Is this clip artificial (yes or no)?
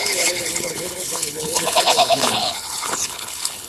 yes